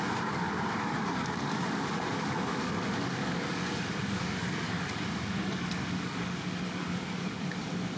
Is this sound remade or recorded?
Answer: remade